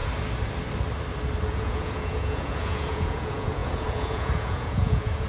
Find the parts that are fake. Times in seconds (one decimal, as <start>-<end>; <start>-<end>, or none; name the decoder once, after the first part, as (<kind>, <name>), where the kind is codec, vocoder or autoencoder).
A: 1.4-5.3 (vocoder, Vocos)